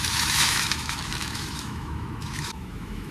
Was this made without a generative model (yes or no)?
no